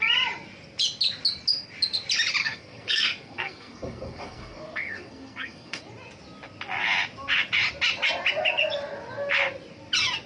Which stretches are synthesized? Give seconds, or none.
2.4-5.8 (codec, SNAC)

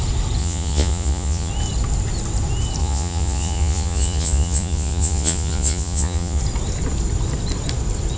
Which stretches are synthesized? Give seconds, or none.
0.4-1.5 (vocoder, Vocos); 2.8-6.4

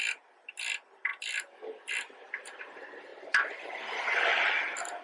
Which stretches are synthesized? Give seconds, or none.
0.0-5.0 (vocoder, BigVGAN v2)

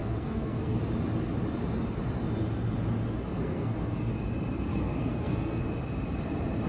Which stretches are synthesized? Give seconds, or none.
0.0-0.8 (codec, SNAC); 3.3-4.1; 4.7-5.6

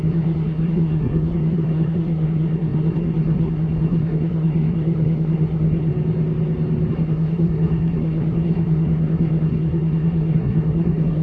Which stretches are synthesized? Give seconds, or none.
0.0-5.9 (codec, SNAC); 6.9-11.2

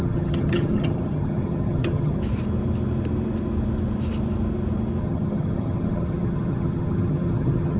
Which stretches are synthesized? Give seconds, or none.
0.0-2.2 (vocoder, HiFi-GAN); 5.0-7.8